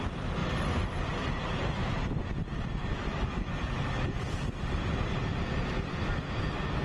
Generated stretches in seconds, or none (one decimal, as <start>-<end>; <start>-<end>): 0.4-4.5